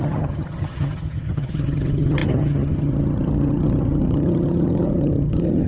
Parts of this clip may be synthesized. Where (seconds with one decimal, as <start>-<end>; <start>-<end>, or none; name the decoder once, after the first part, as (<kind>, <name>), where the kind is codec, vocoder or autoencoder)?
0.0-5.7 (vocoder, HiFi-GAN)